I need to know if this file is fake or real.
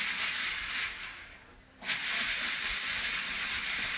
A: real